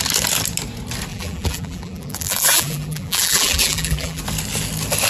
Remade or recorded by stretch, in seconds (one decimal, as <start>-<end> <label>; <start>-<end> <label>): 0.0-1.1 recorded; 1.1-4.2 remade; 4.2-5.1 recorded